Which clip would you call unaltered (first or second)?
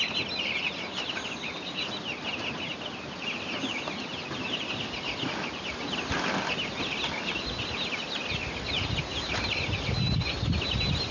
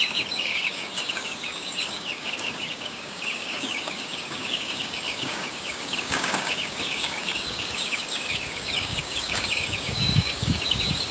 first